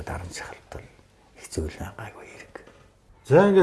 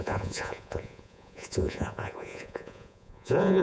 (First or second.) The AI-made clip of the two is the second